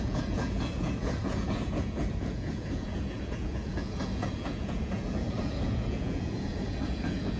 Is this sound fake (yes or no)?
yes